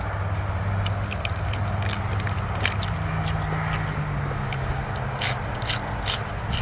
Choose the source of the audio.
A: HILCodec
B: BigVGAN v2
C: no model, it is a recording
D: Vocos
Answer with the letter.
C